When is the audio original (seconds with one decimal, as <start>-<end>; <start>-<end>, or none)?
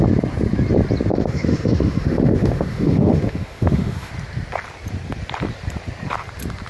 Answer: 0.0-1.1; 4.1-6.7